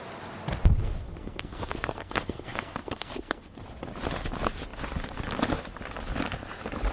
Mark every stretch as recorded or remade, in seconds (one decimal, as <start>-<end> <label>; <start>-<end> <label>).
0.0-0.8 recorded; 0.8-3.6 remade; 3.6-6.9 recorded